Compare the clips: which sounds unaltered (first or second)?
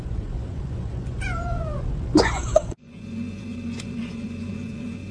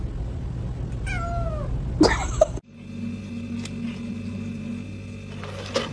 second